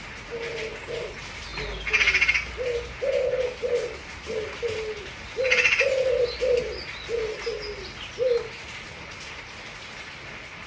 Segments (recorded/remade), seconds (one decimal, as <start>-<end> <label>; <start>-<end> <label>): 0.0-10.7 recorded